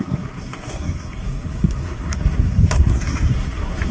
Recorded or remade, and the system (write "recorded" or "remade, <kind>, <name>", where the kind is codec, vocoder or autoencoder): remade, codec, SNAC